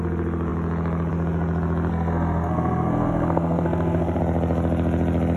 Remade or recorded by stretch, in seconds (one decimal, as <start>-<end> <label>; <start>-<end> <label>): 0.0-1.9 recorded; 1.9-4.2 remade; 4.2-5.4 recorded